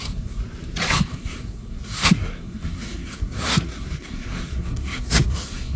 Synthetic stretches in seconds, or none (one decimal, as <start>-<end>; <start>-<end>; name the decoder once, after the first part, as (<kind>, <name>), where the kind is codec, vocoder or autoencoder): 0.0-0.4 (codec, SNAC); 1.1-5.8